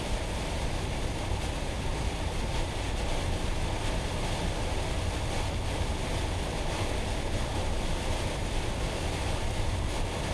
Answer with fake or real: real